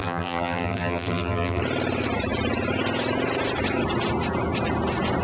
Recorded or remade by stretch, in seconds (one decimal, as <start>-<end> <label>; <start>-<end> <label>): 0.0-1.6 remade; 1.6-5.2 recorded